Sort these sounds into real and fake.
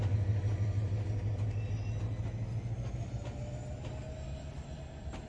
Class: real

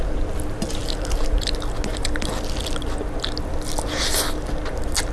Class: real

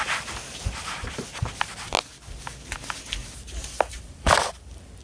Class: real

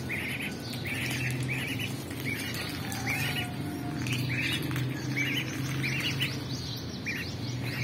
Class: real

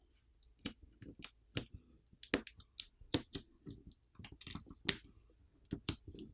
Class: real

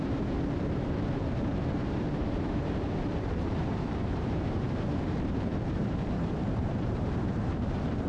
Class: fake